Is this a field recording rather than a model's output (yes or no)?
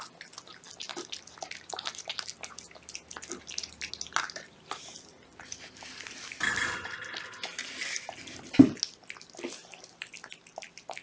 yes